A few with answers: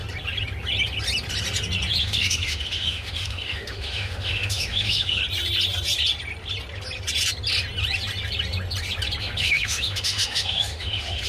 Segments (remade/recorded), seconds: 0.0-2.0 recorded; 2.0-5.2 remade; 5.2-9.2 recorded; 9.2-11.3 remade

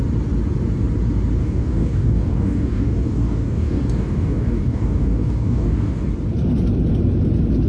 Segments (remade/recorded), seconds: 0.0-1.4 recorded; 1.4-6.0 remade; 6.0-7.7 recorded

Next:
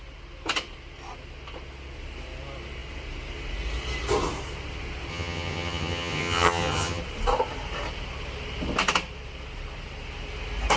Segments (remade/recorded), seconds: 0.0-5.1 recorded; 5.1-7.0 remade; 7.0-10.8 recorded